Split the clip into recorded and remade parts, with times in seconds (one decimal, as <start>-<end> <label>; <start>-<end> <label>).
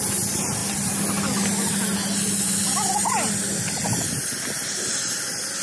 0.0-5.6 recorded